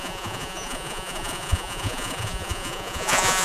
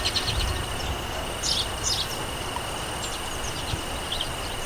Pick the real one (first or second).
second